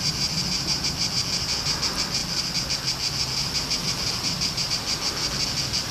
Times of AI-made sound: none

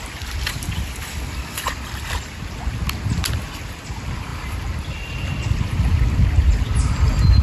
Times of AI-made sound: none

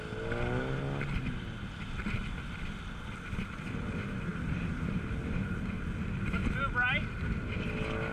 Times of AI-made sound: none

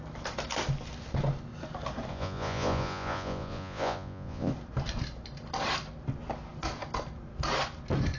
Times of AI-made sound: 2.1-4.5 (vocoder, Vocos)